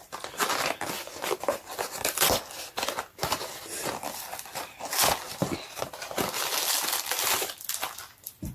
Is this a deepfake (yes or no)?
no